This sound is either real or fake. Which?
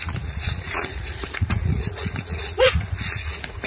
fake